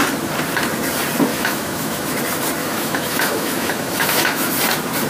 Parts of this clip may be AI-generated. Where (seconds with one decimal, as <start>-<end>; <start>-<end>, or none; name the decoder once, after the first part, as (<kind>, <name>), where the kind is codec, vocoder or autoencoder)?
1.3-2.2 (autoencoder, DAC-VAE); 2.6-4.5